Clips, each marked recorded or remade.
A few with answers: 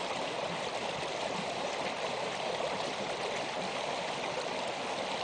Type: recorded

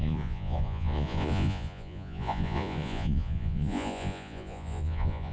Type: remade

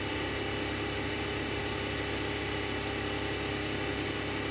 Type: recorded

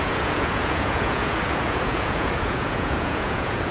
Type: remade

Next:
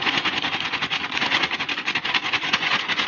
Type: remade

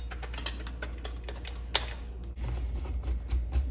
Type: recorded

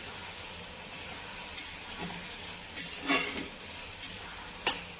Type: recorded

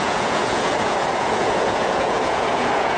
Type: remade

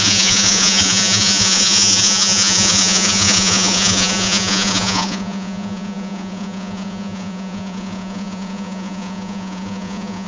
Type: remade